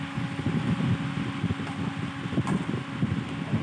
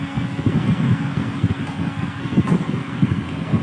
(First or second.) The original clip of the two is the first